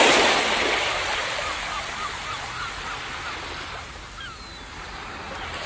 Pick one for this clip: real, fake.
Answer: real